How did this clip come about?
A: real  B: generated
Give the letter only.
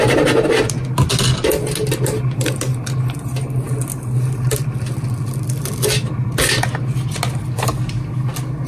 A